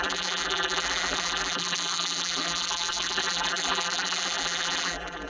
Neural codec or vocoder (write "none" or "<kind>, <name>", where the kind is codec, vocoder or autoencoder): vocoder, BigVGAN v2